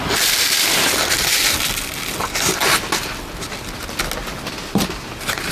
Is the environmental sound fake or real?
real